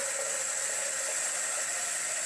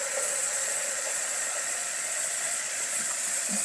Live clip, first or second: first